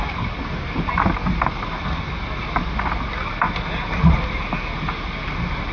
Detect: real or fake real